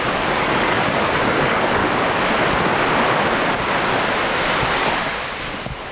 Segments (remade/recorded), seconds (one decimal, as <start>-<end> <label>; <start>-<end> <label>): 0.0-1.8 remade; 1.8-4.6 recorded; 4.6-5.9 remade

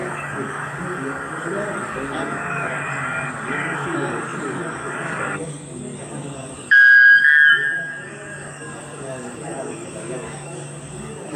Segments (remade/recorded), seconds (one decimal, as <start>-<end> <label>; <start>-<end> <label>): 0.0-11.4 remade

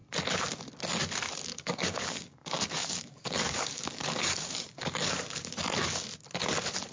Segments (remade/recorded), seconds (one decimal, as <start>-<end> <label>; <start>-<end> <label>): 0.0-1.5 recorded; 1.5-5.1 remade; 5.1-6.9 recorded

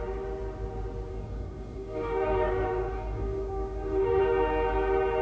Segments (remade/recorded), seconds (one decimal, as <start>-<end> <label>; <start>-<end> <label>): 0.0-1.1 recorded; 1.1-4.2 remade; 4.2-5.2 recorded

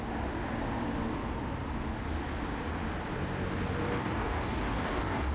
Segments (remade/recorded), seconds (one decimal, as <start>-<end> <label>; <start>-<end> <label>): 0.0-4.0 recorded; 4.0-5.3 remade